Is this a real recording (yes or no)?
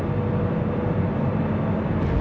yes